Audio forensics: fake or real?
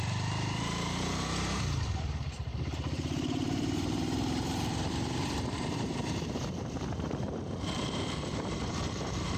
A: fake